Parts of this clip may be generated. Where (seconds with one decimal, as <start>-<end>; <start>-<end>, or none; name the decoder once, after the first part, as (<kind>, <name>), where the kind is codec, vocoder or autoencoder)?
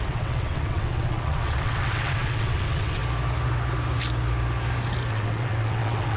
0.0-3.0 (vocoder, WaveNeXt); 5.1-6.2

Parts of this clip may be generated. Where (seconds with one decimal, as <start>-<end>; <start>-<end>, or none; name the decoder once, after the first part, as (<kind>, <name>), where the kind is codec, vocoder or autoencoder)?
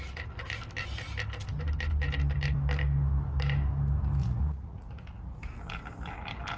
4.2-5.4 (vocoder, Vocos)